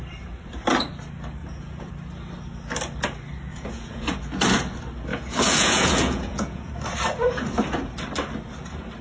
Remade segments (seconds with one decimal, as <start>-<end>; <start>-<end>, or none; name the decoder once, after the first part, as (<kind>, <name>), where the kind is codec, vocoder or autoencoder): 1.4-1.9 (vocoder, Vocos); 3.5-4.1; 5.1-6.7